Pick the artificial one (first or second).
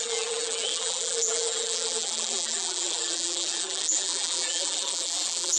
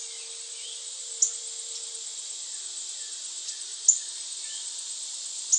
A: first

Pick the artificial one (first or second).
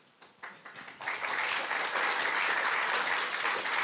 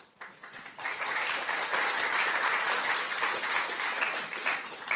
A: second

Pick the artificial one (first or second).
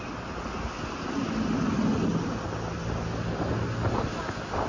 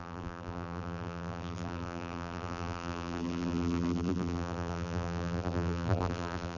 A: second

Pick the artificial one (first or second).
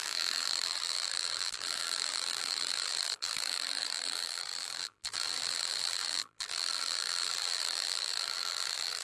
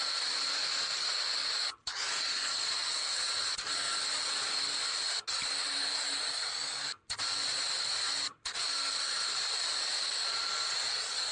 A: first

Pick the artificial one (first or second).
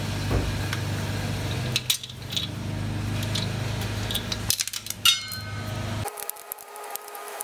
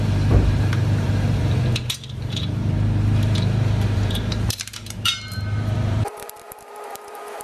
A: second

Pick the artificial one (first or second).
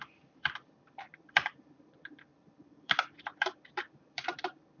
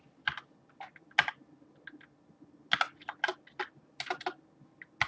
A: first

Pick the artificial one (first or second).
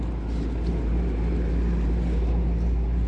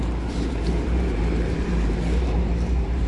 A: second